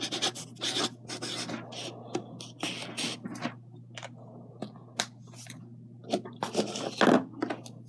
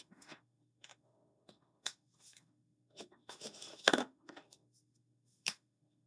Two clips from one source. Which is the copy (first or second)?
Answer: second